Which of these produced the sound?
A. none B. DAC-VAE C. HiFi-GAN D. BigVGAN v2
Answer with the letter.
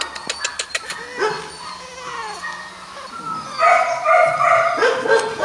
A